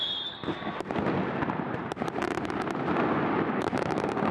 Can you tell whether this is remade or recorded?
remade